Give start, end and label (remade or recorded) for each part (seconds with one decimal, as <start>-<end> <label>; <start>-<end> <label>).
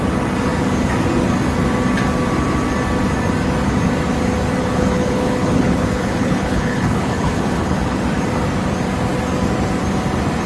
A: 0.0-4.6 recorded; 4.6-8.0 remade; 8.0-10.5 recorded